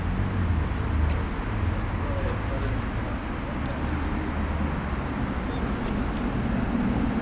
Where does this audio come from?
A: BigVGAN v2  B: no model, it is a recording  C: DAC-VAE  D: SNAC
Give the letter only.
B